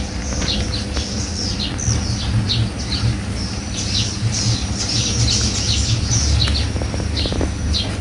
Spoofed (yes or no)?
no